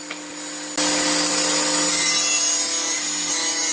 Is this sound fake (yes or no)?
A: no